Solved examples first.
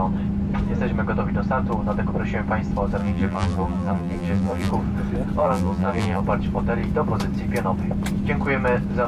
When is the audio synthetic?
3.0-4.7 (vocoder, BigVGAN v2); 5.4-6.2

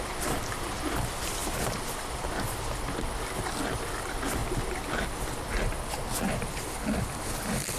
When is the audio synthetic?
none

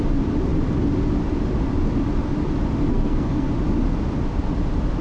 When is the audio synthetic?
2.9-3.5 (codec, SNAC)